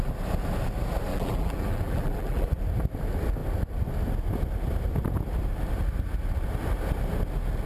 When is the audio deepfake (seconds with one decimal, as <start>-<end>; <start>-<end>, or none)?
1.1-2.6

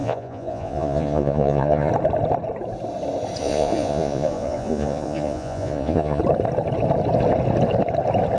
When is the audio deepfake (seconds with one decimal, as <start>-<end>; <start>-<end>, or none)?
0.0-1.9; 3.4-6.2

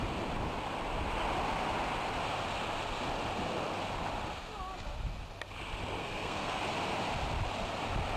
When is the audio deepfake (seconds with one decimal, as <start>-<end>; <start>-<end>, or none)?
6.0-6.6

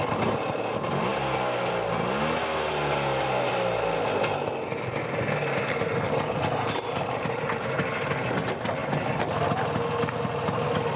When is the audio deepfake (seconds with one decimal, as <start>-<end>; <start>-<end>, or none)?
none

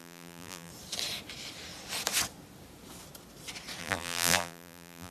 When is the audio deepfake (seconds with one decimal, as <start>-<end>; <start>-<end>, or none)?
0.0-0.7; 3.8-5.1

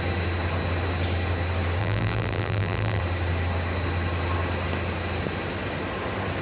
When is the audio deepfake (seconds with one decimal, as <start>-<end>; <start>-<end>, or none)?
1.8-3.0